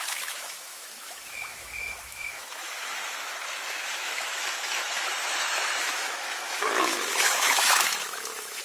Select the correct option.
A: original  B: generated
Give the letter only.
B